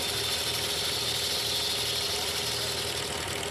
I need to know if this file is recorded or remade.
recorded